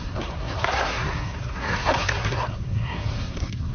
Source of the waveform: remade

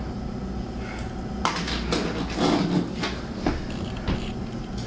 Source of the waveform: recorded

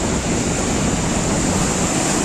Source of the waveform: recorded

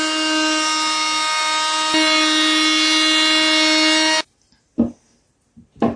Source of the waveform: recorded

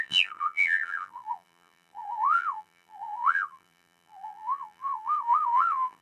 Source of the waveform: remade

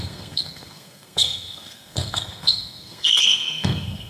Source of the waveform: remade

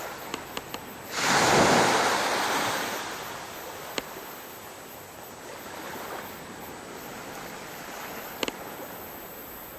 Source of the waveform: recorded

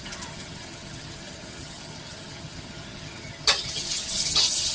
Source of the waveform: remade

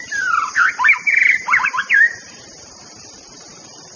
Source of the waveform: remade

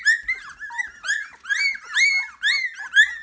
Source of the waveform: recorded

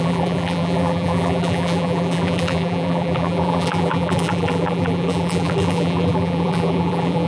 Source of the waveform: remade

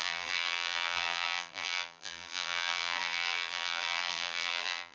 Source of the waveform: remade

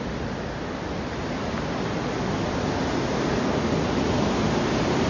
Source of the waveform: recorded